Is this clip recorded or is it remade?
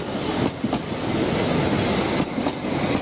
recorded